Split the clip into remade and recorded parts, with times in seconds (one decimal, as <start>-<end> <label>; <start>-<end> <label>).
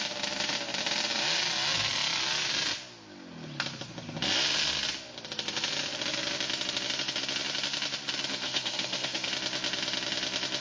0.0-8.3 recorded; 8.3-9.3 remade; 9.3-10.6 recorded